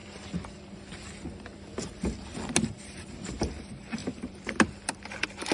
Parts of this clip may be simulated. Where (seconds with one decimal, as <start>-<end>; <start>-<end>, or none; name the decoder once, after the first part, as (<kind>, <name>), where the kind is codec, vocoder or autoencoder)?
0.0-5.5 (vocoder, BigVGAN v2)